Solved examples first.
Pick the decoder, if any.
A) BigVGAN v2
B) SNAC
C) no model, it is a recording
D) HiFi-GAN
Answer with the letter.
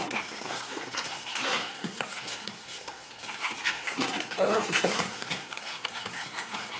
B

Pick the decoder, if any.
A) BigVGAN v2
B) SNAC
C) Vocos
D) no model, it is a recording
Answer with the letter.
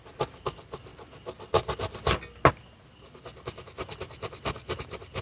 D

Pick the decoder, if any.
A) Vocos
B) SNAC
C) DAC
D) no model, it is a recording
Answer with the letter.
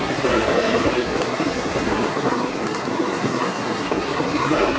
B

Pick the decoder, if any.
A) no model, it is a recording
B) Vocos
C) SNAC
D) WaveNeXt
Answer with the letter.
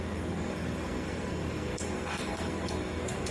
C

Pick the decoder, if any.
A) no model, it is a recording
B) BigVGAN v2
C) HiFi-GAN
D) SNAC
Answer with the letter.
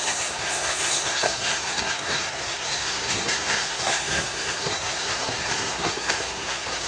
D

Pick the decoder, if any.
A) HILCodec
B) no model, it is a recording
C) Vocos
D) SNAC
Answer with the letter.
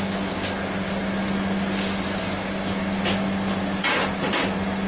B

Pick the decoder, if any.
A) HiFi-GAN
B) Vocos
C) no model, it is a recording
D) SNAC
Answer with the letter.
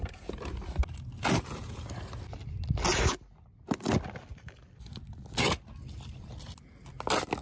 C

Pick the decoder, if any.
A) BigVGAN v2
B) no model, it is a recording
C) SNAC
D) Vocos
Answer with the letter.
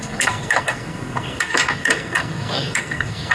C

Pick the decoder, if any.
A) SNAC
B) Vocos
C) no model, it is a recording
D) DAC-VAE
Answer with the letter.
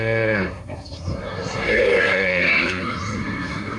A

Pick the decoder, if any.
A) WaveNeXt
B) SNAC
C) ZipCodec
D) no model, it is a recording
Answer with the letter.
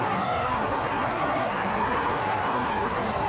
B